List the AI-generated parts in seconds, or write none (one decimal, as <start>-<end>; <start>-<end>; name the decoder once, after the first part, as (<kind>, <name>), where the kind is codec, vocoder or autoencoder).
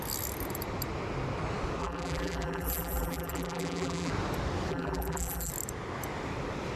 1.8-4.1 (vocoder, BigVGAN v2); 4.7-5.5